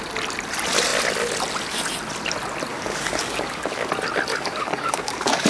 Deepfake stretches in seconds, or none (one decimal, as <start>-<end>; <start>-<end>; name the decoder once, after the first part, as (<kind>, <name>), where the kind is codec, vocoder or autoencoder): 2.7-3.9 (codec, DAC); 4.3-5.5